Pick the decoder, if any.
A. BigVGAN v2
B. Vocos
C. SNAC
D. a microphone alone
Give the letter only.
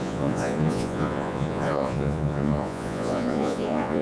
B